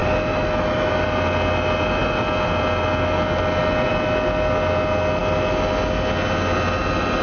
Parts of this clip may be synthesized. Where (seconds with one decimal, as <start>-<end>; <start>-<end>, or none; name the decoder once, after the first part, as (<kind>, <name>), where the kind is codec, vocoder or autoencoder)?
0.0-0.9 (autoencoder, DAC-VAE)